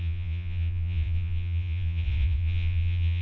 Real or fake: fake